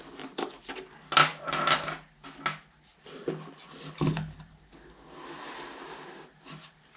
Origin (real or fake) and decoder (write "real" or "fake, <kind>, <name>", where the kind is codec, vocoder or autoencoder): real